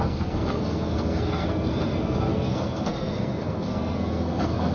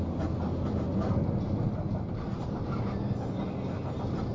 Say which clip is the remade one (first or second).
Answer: first